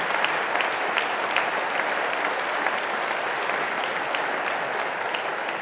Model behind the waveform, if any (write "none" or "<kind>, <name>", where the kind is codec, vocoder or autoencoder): none